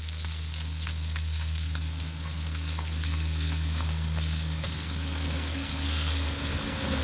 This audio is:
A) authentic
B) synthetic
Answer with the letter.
B